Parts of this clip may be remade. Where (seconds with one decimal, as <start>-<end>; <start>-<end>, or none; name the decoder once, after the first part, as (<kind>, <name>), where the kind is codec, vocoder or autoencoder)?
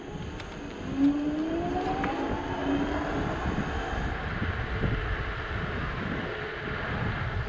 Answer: none